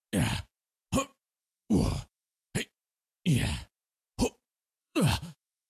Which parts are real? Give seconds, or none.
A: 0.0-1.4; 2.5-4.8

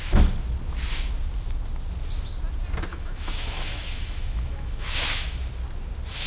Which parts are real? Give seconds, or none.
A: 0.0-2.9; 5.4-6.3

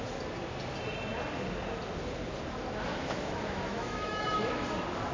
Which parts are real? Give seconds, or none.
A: 0.0-2.9; 4.6-5.1

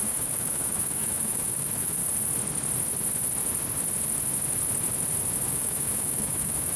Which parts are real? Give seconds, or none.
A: 2.0-5.5

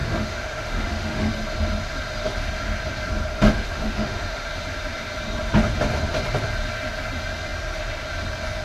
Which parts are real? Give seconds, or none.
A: 1.3-3.3; 4.5-8.6

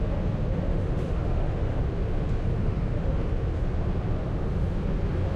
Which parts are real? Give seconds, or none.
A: 0.0-0.7; 1.8-2.6; 3.3-5.4

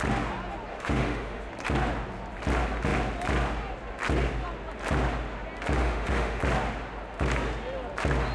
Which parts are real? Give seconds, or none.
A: 0.0-0.7; 1.5-5.8; 6.4-8.3

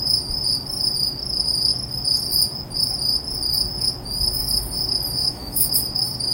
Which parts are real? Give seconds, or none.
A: 0.0-5.2; 5.7-6.3